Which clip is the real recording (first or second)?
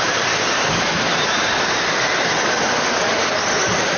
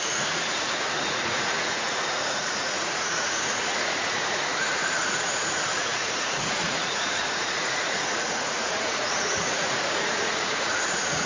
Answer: first